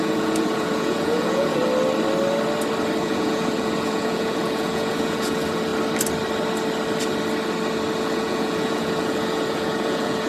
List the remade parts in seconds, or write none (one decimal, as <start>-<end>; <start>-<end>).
0.0-1.6; 3.0-5.7; 8.0-10.3